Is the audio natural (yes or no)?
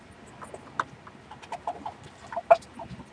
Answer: yes